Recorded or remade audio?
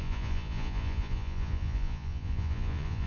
remade